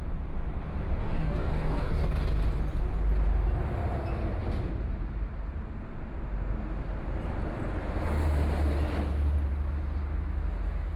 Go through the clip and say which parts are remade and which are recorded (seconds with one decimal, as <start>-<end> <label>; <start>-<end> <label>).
0.0-1.0 recorded; 1.0-2.1 remade; 2.1-11.0 recorded